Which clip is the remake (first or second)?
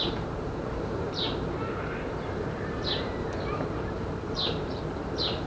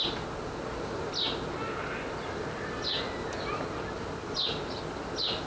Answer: first